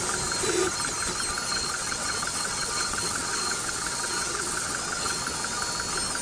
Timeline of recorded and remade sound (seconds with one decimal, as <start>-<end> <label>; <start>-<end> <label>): 0.0-1.5 recorded; 1.5-5.2 remade; 5.2-6.2 recorded